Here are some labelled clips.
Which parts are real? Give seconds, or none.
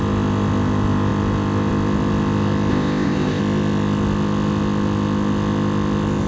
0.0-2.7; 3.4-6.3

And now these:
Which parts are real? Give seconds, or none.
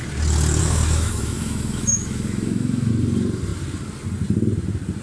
0.0-0.6; 2.9-5.0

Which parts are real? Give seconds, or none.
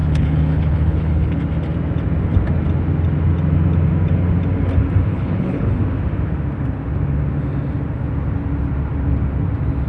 1.4-5.1; 5.8-9.9